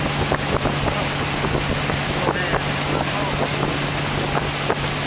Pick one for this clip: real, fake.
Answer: real